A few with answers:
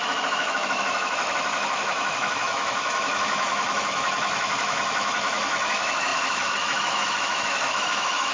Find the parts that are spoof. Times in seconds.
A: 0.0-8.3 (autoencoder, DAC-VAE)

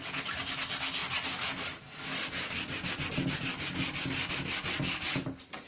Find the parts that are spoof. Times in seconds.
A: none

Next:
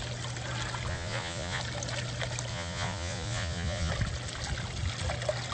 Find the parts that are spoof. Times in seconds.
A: 0.9-1.6 (vocoder, Vocos); 2.5-3.9